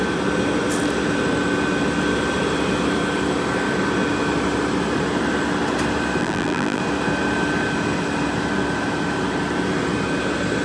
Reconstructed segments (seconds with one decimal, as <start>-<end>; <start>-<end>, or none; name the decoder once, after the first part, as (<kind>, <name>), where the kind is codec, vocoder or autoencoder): 6.2-6.8 (vocoder, BigVGAN v2)